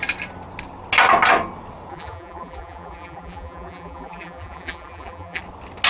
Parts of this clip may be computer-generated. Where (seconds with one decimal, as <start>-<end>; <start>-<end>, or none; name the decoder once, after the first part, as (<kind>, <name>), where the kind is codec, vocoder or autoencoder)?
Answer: 1.9-5.4 (vocoder, BigVGAN v2)

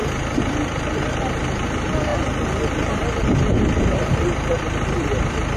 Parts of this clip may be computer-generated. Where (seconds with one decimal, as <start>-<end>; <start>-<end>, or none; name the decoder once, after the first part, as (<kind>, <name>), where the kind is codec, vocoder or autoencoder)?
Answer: 0.0-1.2 (vocoder, BigVGAN v2); 2.1-5.6